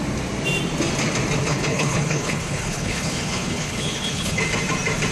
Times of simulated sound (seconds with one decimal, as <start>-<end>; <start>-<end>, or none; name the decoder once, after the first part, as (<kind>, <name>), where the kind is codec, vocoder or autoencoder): 1.5-4.4 (codec, HILCodec)